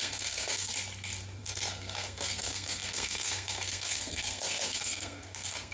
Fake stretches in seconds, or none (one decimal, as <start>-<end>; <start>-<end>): 0.0-0.7; 1.4-5.7